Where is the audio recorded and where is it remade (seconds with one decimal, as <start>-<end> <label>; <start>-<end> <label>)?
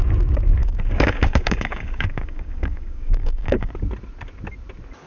0.0-0.6 recorded; 0.6-3.7 remade; 3.7-5.1 recorded